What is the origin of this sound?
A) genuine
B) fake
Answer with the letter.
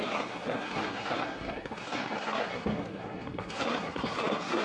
B